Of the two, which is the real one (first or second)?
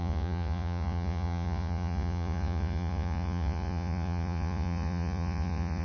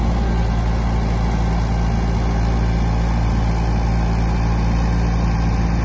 second